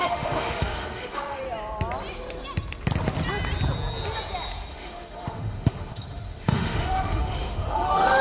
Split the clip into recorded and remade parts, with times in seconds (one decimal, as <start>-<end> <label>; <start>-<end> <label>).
0.0-1.4 remade; 1.4-4.7 recorded; 4.7-8.2 remade